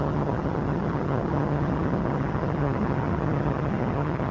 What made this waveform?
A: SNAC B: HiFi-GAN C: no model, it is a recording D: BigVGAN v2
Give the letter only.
B